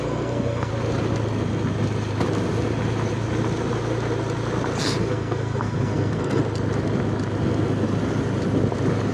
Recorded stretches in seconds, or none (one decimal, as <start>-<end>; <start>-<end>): 0.7-5.0; 6.4-9.1